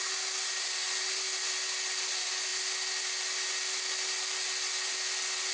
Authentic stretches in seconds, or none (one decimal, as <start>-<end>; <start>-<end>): 0.0-5.5